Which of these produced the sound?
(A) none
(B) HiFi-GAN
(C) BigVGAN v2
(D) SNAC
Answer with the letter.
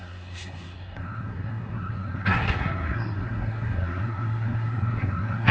D